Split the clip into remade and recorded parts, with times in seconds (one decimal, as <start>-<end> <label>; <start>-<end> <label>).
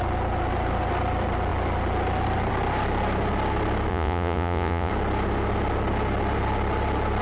0.0-3.9 recorded; 3.9-4.9 remade; 4.9-7.2 recorded